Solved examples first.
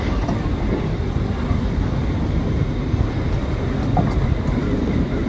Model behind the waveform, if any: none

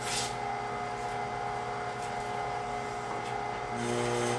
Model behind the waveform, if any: none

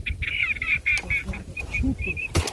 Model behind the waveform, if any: none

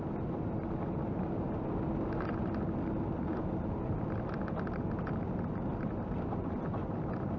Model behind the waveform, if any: none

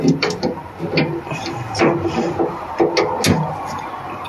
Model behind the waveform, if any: none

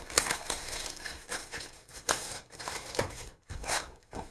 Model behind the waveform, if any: codec, SNAC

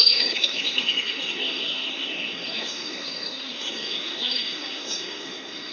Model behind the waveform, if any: codec, SNAC